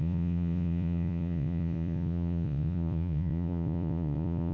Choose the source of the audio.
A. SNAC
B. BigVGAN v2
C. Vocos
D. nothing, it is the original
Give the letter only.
C